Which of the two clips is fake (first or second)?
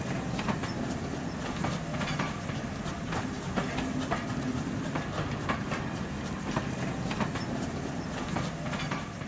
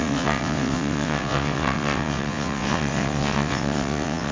second